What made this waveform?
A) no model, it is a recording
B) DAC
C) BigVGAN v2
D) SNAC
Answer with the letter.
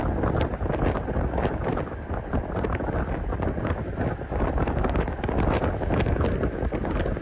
A